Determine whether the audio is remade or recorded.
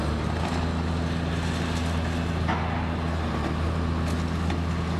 recorded